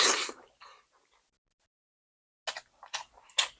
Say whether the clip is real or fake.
real